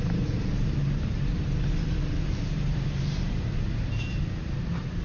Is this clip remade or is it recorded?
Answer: remade